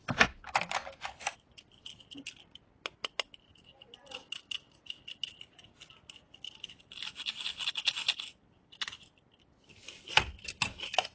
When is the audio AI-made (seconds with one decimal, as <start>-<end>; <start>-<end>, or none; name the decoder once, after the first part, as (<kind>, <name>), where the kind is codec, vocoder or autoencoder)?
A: none